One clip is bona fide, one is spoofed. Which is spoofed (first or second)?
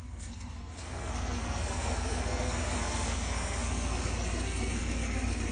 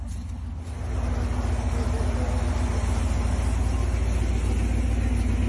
first